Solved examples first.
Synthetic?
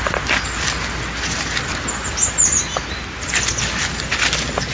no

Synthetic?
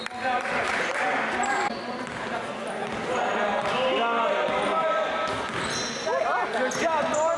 no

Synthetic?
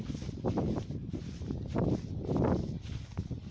no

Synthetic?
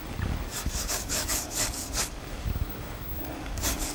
yes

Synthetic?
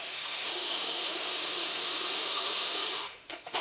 yes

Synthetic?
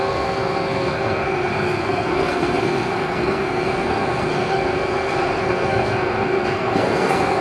yes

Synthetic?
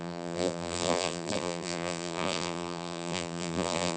yes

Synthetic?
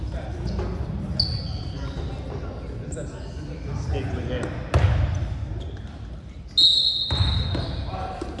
no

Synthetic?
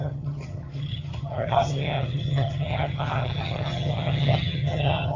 yes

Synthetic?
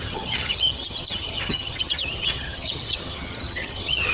yes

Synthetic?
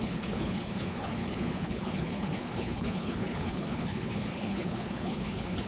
yes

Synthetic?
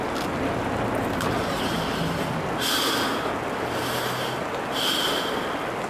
no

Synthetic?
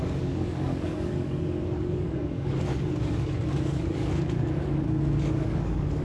yes